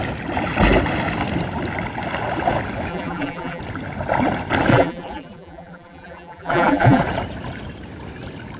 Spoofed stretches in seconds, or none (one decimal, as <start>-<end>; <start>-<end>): 2.9-3.6; 4.7-7.0